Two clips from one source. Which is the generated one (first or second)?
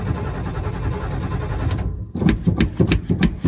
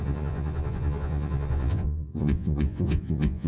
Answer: second